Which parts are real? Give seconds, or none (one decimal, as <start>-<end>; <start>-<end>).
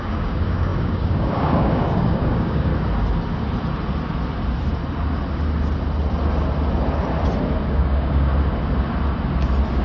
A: 2.7-7.7; 8.3-9.8